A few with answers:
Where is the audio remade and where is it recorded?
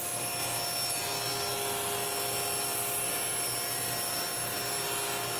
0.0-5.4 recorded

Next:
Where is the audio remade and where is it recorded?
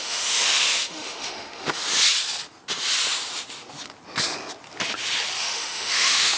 0.0-1.8 remade; 1.8-5.4 recorded; 5.4-6.4 remade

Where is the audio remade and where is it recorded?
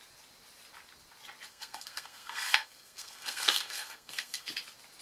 0.0-1.5 recorded; 1.5-4.5 remade; 4.5-5.0 recorded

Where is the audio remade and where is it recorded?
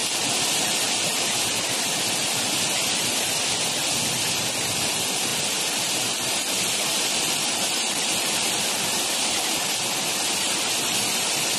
0.0-11.6 recorded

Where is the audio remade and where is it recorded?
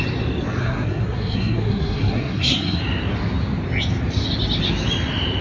0.0-0.6 recorded; 0.6-2.8 remade; 2.8-5.4 recorded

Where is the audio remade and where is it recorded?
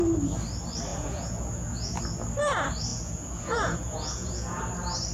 0.0-0.9 recorded; 0.9-2.0 remade; 2.0-2.9 recorded; 2.9-4.6 remade; 4.6-5.1 recorded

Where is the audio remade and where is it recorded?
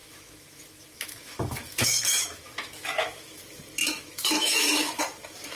0.0-3.4 remade; 3.4-3.8 recorded; 3.8-5.0 remade; 5.0-5.6 recorded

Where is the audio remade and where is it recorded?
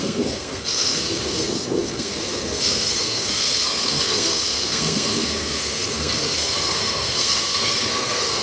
0.0-8.4 remade